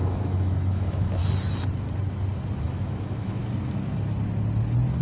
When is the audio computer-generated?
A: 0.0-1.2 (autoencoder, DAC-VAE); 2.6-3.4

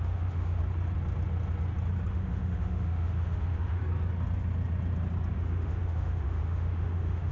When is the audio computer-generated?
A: 0.0-0.6 (autoencoder, DAC-VAE); 2.1-3.8; 5.3-7.3